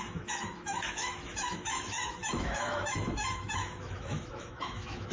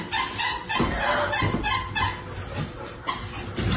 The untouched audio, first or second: second